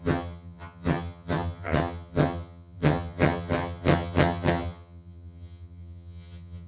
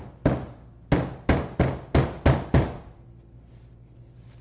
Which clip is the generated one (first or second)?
first